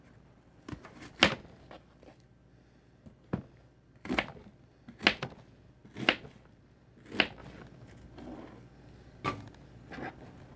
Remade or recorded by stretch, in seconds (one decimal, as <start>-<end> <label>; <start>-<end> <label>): 0.0-10.6 recorded